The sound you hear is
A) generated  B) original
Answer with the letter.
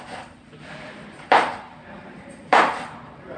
A